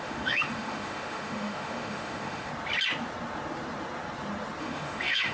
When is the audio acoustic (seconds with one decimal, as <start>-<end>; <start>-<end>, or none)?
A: 2.5-4.6